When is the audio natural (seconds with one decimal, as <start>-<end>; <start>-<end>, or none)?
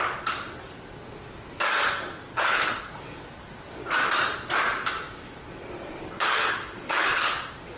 0.0-2.3; 2.9-6.0; 7.3-7.8